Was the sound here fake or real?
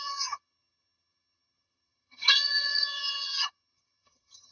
fake